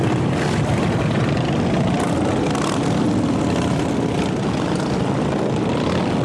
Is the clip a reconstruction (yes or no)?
no